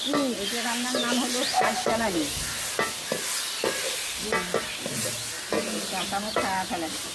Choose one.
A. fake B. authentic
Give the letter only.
B